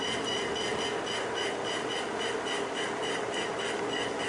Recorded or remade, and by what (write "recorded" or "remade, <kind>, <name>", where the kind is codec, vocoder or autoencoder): recorded